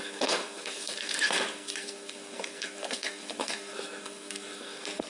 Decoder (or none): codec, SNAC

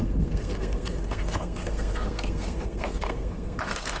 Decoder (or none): codec, SNAC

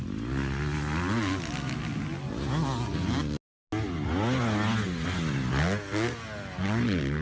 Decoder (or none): none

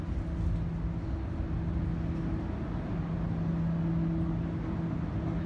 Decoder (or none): none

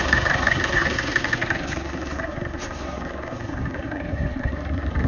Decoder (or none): codec, SNAC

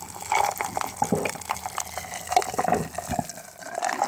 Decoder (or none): none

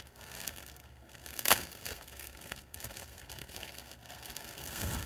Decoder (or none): codec, SNAC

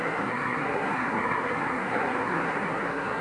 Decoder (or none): codec, SNAC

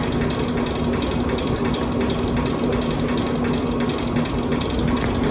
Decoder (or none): none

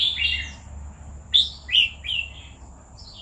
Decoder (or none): none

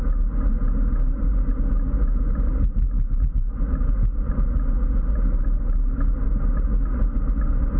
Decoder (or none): none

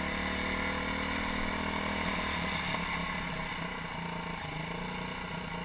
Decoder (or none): none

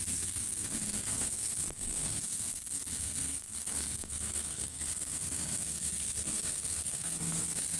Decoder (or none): codec, SNAC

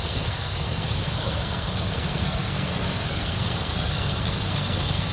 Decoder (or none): codec, SNAC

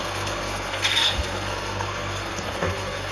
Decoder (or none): codec, SNAC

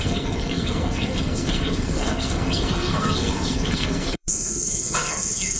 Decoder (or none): codec, SNAC